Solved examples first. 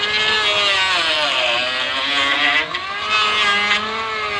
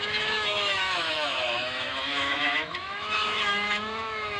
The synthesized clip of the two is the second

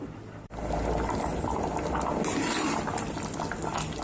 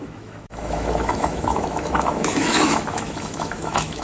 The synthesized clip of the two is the second